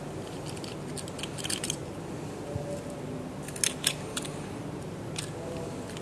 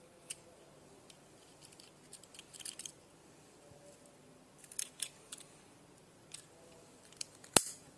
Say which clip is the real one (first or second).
first